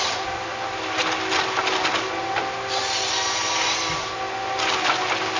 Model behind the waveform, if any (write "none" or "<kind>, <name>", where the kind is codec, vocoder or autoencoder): none